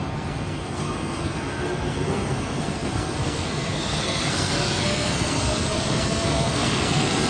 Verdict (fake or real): fake